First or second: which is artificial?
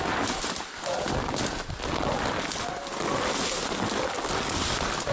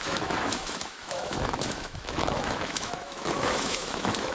second